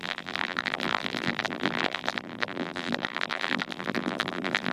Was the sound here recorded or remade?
remade